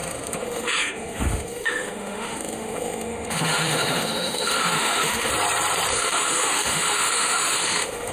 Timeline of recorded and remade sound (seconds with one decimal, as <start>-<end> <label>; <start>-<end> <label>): 0.0-5.3 remade; 5.3-5.9 recorded; 5.9-8.1 remade